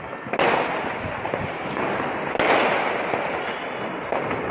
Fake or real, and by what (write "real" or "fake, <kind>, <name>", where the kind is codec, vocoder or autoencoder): real